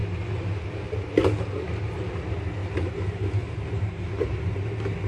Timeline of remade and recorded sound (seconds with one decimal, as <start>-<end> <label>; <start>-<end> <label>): 0.0-0.5 remade; 0.5-2.6 recorded; 2.6-4.5 remade; 4.5-5.1 recorded